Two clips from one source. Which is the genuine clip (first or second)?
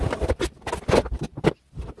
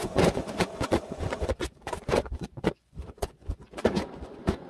first